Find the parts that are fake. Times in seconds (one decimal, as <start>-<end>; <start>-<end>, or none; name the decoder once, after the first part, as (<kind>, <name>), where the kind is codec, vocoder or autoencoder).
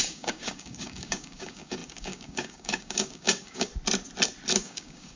0.0-3.7 (codec, DAC); 4.5-5.2